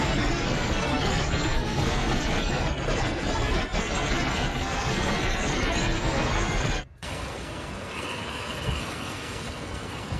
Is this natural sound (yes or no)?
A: no